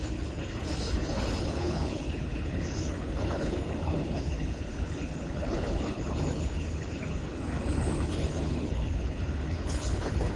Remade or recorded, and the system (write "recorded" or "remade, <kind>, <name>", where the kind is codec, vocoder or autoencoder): remade, codec, HILCodec